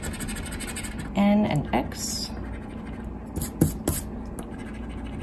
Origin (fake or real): real